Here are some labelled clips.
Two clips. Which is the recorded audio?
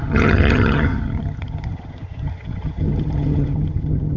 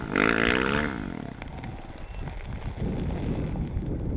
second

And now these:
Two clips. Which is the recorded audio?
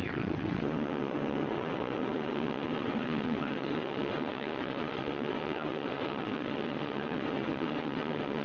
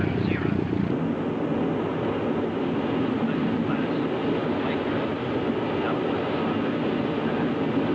second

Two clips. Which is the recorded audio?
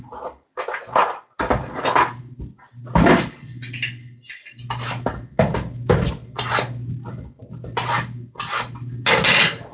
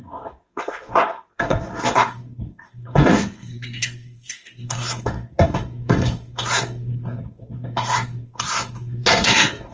first